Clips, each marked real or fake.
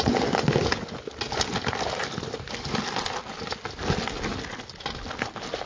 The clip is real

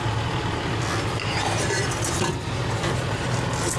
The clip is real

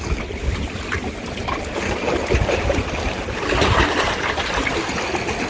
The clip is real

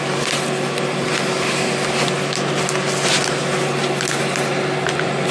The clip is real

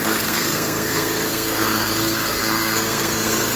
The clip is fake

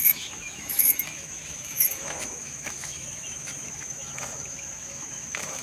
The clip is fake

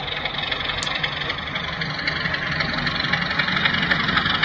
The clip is real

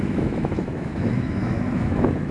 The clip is fake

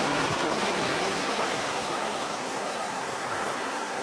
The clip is fake